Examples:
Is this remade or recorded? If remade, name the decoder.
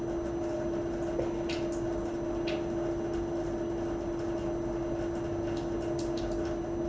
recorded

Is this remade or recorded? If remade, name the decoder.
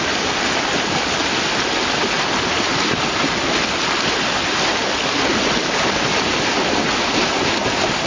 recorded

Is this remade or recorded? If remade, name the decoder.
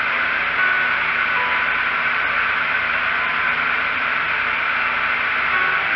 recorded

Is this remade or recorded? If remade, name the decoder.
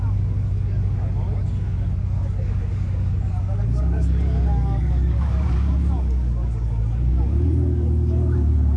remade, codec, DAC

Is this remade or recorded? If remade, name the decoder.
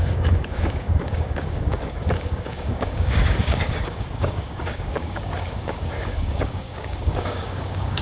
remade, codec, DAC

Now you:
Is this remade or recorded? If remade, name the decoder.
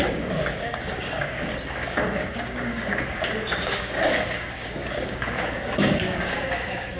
remade, codec, DAC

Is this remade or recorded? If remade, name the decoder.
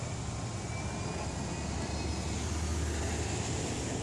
recorded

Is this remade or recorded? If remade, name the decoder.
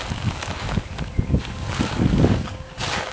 remade, codec, DAC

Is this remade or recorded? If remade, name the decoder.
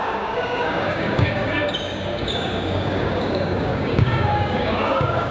remade, codec, DAC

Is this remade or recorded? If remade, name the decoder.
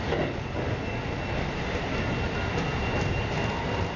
recorded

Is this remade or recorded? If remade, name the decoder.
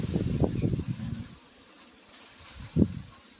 recorded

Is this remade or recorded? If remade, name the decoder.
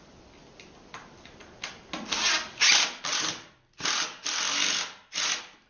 recorded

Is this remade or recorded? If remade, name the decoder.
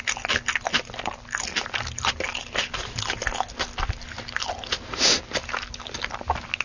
recorded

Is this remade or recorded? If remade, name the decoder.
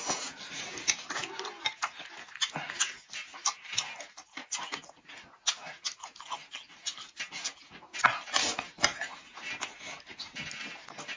recorded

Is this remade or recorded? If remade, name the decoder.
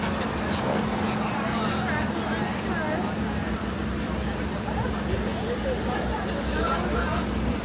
recorded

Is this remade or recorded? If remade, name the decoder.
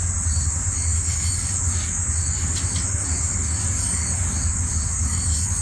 remade, codec, DAC